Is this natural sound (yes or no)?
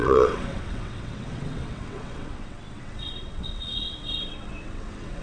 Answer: no